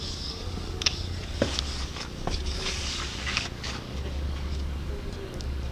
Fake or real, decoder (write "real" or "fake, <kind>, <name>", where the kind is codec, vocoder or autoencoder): fake, codec, DAC